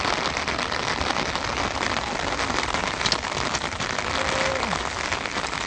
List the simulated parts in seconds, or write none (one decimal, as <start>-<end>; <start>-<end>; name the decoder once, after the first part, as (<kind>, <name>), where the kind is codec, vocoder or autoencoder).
none